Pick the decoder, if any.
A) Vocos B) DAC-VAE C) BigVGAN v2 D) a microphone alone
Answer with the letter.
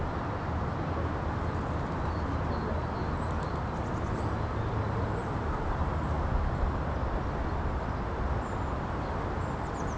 D